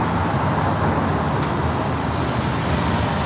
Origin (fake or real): real